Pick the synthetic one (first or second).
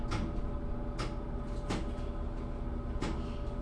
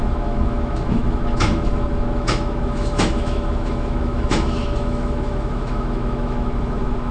second